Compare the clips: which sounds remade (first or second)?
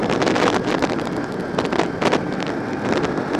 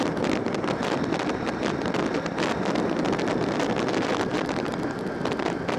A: second